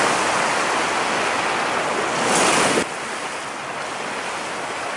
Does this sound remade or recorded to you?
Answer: recorded